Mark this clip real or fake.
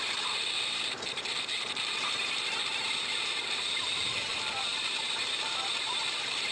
fake